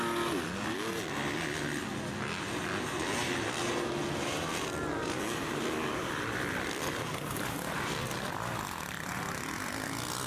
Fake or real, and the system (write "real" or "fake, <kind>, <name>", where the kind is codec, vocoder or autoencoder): real